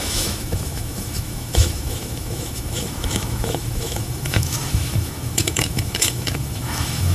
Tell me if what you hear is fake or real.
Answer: fake